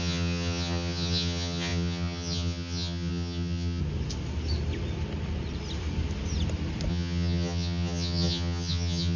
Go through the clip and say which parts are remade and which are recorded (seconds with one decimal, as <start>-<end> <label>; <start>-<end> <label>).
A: 0.0-3.8 remade; 3.8-6.9 recorded; 6.9-9.2 remade